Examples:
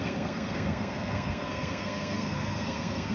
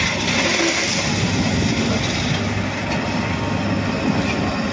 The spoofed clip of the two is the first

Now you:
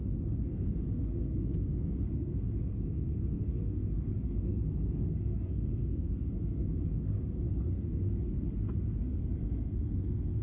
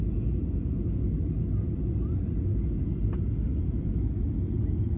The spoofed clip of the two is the first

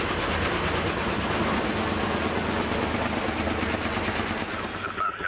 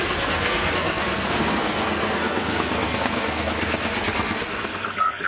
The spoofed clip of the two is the second